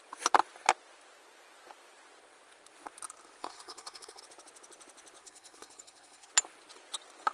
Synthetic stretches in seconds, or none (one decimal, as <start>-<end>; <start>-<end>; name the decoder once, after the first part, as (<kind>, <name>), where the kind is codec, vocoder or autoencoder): 3.4-4.2 (codec, SNAC); 5.2-6.3